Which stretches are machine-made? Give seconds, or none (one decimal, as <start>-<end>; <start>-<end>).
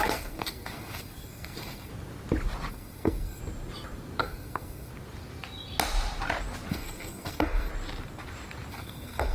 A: 0.0-1.9; 2.7-3.4; 4.2-4.9; 6.7-7.7; 8.7-9.3